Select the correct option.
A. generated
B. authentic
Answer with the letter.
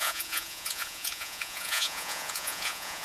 A